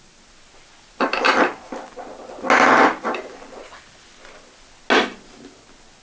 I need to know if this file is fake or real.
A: real